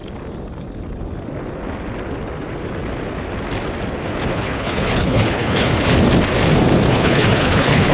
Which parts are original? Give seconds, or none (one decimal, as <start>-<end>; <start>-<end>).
0.0-4.3; 5.7-6.9